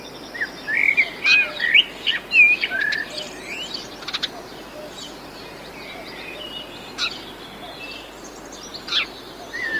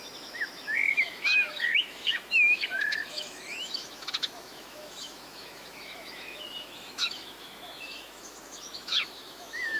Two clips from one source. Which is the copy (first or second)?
second